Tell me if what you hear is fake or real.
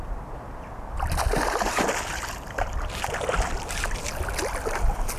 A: real